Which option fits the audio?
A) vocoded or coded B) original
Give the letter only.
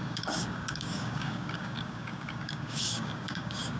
A